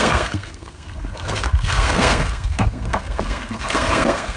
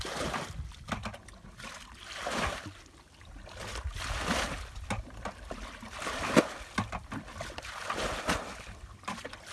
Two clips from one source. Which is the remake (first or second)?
first